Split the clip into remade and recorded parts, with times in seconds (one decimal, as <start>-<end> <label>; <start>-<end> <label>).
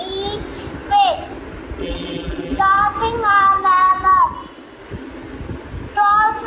0.0-1.8 recorded; 1.8-2.6 remade; 2.6-6.5 recorded